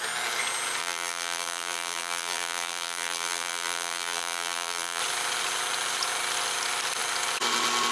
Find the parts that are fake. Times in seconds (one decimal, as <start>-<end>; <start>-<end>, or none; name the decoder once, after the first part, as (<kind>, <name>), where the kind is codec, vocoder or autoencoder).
0.8-5.0 (vocoder, BigVGAN v2)